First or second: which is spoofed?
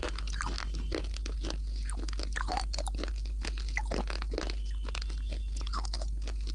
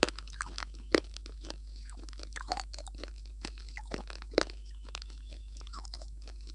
second